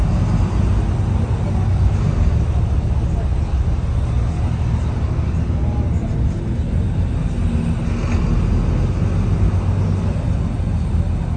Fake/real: real